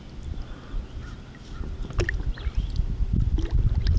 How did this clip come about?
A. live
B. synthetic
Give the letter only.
A